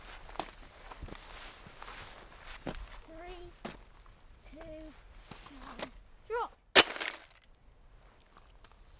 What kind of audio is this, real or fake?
real